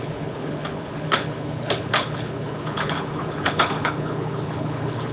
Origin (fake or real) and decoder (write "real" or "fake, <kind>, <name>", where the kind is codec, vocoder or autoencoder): fake, codec, HILCodec